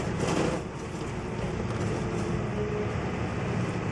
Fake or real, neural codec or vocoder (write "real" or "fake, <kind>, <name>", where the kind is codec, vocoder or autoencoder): real